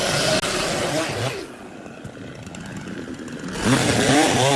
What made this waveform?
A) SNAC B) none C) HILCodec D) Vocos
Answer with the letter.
B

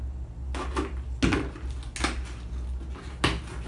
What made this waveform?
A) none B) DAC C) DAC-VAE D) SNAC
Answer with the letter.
A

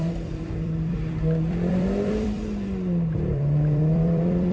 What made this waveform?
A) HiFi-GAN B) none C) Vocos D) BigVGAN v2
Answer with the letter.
D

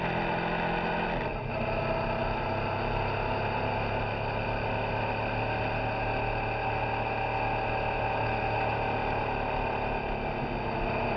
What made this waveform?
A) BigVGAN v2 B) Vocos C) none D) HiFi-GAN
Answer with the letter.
C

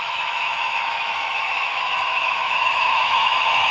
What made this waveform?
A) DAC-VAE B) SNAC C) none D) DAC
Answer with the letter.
A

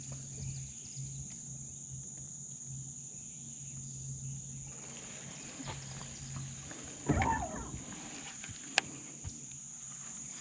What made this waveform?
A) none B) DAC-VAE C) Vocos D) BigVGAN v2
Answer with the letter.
A